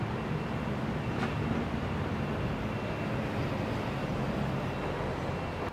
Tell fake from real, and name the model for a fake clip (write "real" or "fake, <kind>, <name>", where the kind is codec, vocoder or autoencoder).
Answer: real